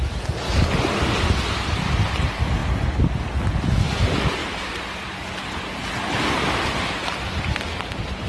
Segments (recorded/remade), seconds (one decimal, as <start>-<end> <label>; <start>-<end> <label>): 0.0-4.4 recorded; 4.4-5.2 remade; 5.2-8.3 recorded